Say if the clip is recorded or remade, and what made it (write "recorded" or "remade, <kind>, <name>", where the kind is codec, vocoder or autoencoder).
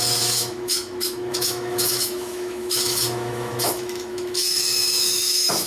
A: remade, autoencoder, DAC-VAE